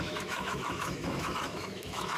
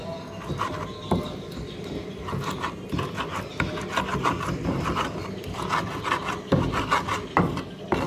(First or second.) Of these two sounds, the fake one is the first